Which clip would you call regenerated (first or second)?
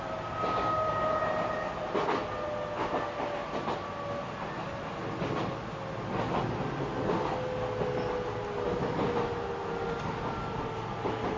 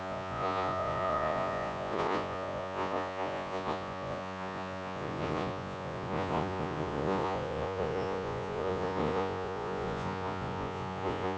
second